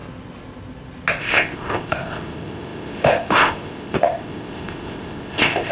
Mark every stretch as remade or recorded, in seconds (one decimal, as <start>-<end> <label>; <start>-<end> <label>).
0.0-1.2 recorded; 1.2-5.7 remade